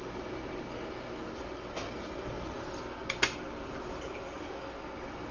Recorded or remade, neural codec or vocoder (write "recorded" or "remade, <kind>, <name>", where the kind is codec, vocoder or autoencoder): recorded